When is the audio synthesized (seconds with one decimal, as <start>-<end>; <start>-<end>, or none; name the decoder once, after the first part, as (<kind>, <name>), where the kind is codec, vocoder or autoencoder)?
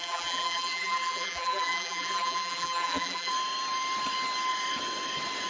0.0-3.3 (vocoder, BigVGAN v2)